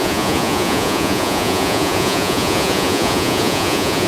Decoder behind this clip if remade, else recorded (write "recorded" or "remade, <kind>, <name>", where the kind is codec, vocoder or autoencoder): remade, vocoder, Vocos